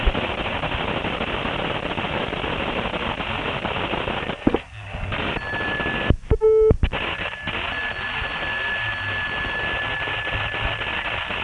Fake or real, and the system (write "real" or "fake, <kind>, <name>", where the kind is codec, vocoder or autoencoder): real